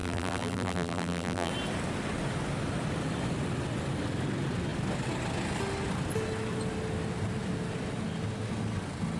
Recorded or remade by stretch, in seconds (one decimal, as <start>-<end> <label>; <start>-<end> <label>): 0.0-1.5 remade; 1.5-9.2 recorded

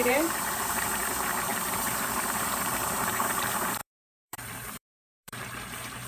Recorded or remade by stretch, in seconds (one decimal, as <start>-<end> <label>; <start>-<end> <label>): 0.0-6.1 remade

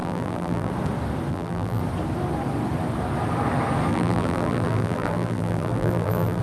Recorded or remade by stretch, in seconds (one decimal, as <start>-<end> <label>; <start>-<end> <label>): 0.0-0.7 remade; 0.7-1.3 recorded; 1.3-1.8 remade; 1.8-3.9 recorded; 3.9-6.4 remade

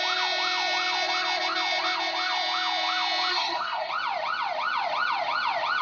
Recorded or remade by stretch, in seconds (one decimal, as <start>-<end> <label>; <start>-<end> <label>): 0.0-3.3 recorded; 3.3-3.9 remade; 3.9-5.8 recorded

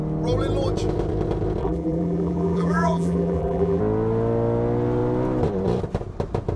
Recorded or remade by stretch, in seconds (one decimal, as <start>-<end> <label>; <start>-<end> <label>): 0.0-1.6 recorded; 1.6-3.8 remade; 3.8-6.6 recorded

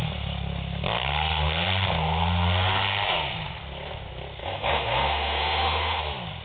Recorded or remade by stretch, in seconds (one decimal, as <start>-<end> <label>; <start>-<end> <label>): 0.0-4.4 recorded; 4.4-6.0 remade; 6.0-6.4 recorded

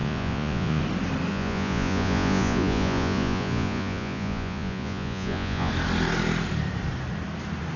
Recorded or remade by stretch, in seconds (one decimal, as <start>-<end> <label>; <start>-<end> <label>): 0.0-0.8 remade; 0.8-1.3 recorded; 1.3-5.7 remade; 5.7-7.8 recorded